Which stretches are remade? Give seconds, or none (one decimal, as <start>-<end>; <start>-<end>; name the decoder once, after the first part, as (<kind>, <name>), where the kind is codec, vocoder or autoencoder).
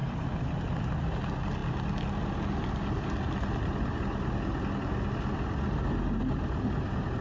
none